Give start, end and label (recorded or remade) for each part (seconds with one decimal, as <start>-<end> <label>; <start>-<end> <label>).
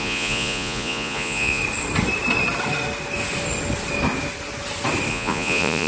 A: 0.0-1.6 remade; 1.6-5.1 recorded; 5.1-5.9 remade